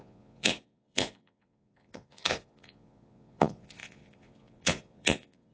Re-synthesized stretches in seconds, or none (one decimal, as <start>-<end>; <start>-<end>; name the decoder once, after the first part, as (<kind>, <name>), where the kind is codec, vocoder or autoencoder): 0.0-5.5 (vocoder, Vocos)